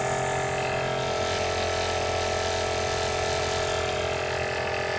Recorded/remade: recorded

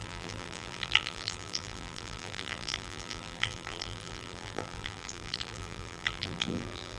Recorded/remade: remade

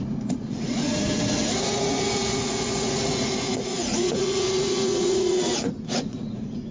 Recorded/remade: remade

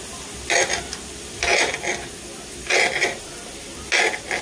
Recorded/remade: recorded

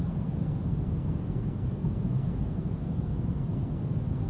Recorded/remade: remade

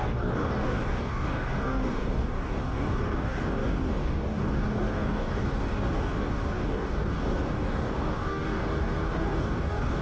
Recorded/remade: remade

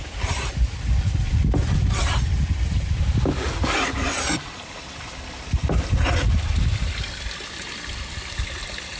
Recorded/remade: remade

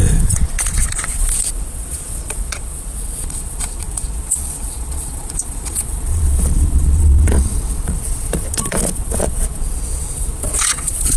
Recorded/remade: remade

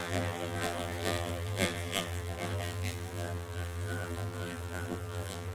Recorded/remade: remade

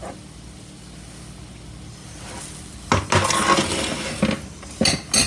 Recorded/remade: recorded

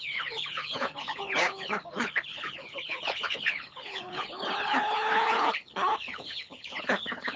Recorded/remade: remade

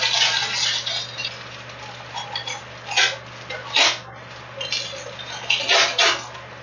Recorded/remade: recorded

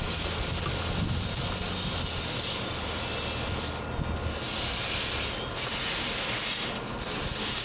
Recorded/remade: recorded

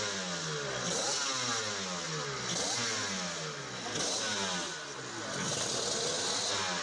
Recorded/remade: recorded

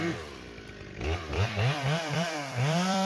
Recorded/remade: remade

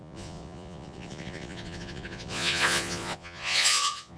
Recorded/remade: remade